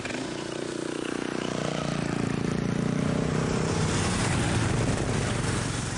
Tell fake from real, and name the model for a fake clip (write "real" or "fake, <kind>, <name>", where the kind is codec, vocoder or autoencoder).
fake, vocoder, BigVGAN v2